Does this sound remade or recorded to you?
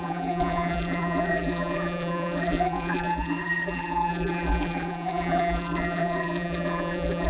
remade